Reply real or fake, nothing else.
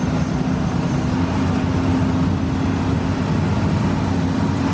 real